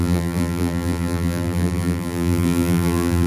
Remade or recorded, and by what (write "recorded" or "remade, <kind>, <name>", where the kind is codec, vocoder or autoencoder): remade, vocoder, BigVGAN v2